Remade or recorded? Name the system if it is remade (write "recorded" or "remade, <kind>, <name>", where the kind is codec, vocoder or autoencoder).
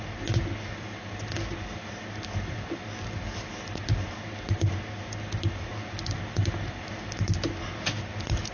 recorded